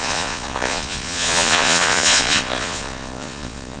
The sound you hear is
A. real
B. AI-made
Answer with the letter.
B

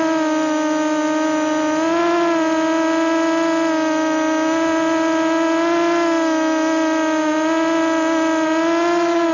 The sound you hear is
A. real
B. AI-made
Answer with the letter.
A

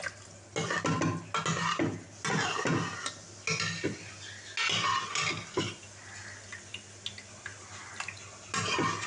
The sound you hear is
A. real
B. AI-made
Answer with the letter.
A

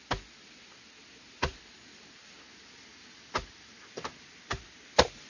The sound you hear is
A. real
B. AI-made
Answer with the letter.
A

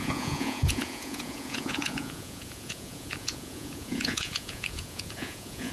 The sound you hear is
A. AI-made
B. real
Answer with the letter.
A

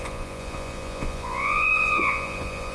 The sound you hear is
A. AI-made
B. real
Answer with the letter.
A